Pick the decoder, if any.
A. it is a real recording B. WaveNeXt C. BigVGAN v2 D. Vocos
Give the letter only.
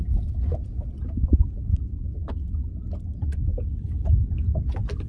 A